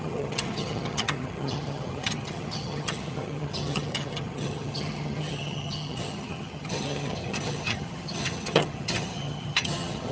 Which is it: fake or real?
fake